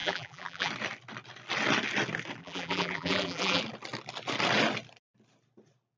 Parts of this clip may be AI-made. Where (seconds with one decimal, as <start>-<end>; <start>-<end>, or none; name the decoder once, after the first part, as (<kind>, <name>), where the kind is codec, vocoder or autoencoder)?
0.0-0.7 (vocoder, BigVGAN v2); 2.4-3.6